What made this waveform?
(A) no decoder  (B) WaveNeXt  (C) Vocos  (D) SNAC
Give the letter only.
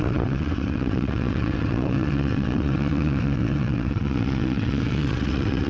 B